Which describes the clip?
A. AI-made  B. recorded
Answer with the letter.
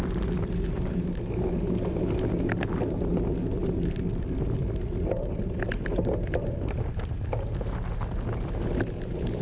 B